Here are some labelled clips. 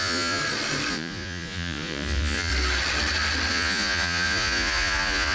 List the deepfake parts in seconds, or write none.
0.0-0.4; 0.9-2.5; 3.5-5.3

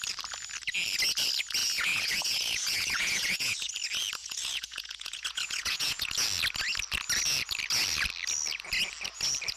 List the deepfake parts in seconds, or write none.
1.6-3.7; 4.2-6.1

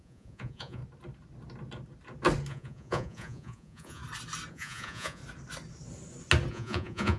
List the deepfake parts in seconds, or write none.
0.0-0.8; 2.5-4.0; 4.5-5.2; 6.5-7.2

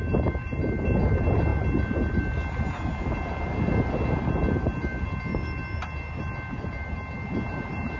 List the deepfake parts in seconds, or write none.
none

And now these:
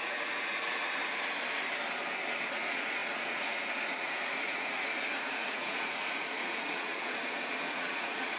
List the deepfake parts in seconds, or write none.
0.0-1.0; 2.5-8.4

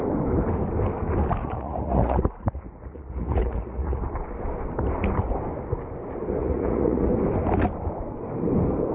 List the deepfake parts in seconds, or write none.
1.4-4.0; 6.4-7.1